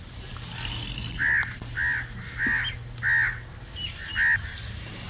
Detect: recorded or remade remade